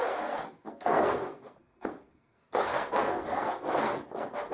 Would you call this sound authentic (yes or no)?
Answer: no